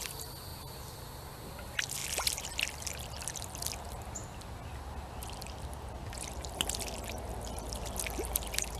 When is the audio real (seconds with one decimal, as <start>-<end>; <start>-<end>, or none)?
0.0-8.8